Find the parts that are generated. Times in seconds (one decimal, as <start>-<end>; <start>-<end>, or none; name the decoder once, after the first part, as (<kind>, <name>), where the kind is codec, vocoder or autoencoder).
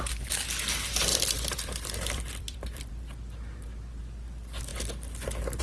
1.1-2.9 (vocoder, BigVGAN v2)